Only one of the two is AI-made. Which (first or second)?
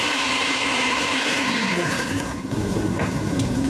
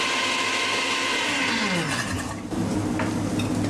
first